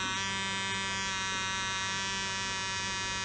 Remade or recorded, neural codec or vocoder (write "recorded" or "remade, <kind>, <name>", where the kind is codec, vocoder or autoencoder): recorded